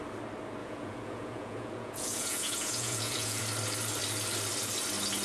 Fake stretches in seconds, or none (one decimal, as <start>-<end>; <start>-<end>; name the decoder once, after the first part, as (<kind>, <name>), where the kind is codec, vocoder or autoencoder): 0.6-3.4 (vocoder, Vocos)